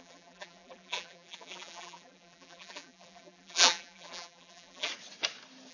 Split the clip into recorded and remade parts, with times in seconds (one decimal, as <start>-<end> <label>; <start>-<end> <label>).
0.0-4.9 remade; 4.9-5.7 recorded